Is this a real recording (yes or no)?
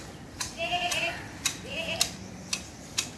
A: yes